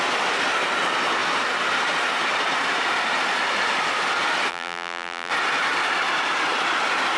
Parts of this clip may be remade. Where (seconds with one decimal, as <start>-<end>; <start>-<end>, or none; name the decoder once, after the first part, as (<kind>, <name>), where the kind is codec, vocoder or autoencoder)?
4.5-5.3 (vocoder, BigVGAN v2)